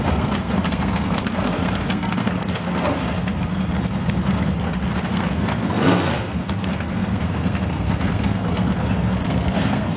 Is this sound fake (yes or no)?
yes